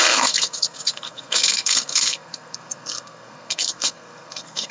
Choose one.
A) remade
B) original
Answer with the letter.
A